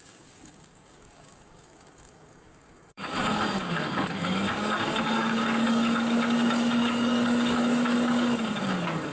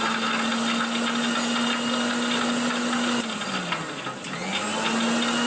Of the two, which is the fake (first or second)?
first